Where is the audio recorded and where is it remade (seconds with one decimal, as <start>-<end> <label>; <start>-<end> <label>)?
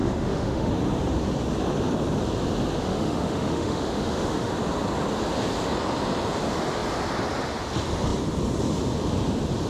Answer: 0.0-0.7 remade; 0.7-2.8 recorded; 2.8-4.5 remade; 4.5-9.7 recorded